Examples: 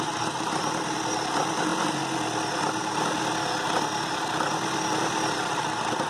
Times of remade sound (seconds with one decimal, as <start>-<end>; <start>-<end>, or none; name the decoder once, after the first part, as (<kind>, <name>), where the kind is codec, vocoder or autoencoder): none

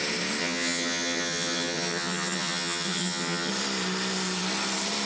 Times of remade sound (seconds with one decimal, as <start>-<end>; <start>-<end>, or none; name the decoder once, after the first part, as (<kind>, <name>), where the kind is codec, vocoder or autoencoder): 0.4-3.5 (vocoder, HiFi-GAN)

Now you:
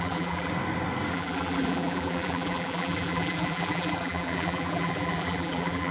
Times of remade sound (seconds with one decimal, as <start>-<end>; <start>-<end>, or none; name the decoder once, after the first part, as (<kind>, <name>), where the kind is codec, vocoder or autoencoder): 0.0-0.5 (vocoder, BigVGAN v2); 1.1-5.9

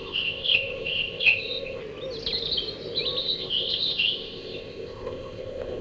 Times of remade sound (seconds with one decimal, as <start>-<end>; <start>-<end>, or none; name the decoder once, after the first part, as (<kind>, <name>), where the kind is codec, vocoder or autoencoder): 0.0-1.8 (codec, ZipCodec); 3.2-5.8

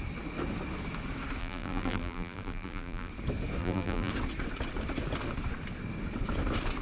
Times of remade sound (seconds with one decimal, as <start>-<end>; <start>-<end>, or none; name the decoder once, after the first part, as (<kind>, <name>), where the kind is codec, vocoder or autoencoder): 1.4-3.1 (vocoder, BigVGAN v2); 3.6-4.1

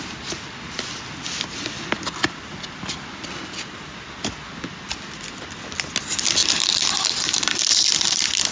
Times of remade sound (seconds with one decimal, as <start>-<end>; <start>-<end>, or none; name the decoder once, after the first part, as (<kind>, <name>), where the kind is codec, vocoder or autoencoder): none

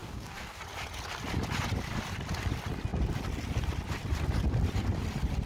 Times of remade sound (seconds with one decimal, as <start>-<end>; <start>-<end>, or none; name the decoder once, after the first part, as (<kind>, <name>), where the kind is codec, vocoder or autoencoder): 0.0-0.6 (codec, DAC)

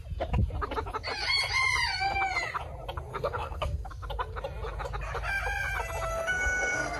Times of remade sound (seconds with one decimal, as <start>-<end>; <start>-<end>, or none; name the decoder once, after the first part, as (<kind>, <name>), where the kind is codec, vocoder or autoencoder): 3.1-3.9 (codec, SNAC); 6.1-7.0